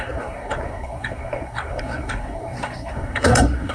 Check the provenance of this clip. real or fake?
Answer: fake